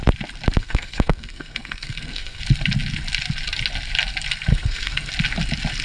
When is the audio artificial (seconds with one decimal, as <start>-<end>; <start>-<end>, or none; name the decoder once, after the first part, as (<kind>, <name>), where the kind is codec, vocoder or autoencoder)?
0.6-2.4 (codec, SNAC); 4.5-5.1